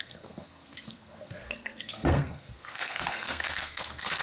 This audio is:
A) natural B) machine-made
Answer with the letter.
B